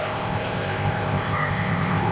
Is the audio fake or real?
fake